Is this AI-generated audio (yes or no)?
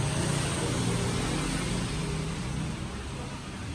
no